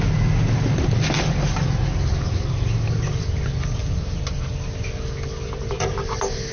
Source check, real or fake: real